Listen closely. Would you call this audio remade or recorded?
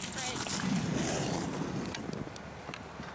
recorded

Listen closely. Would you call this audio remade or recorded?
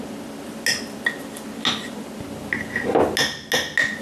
recorded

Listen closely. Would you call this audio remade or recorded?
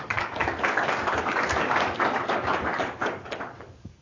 remade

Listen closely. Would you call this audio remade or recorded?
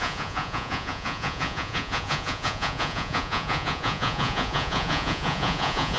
remade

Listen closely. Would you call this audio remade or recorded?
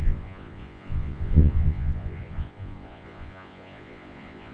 remade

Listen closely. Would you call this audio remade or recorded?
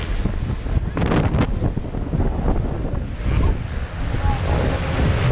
recorded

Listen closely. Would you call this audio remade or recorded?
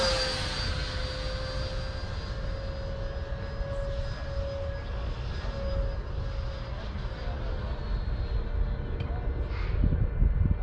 recorded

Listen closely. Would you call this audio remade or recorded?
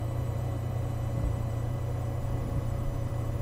remade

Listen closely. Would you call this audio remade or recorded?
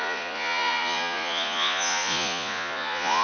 remade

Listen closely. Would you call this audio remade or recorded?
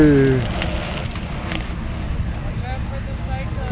recorded